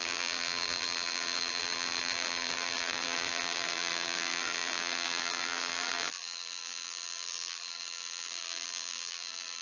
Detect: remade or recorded remade